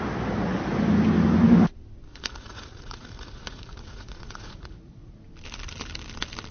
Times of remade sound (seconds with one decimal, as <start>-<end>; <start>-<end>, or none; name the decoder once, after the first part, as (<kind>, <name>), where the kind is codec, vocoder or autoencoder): 2.1-5.3 (vocoder, Vocos)